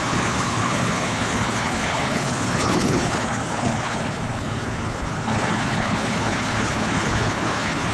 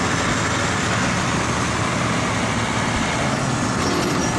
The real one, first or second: second